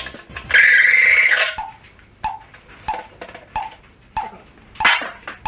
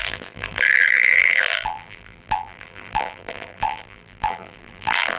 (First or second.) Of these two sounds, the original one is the first